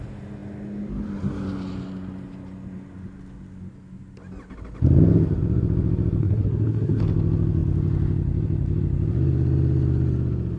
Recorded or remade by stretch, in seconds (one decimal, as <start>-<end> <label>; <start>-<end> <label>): 0.0-6.2 recorded; 6.2-7.0 remade; 7.0-10.6 recorded